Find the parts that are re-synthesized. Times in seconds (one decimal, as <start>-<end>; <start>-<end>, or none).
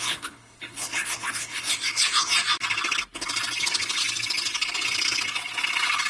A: 0.0-2.3; 3.6-4.0